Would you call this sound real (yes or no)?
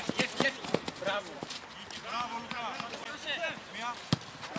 yes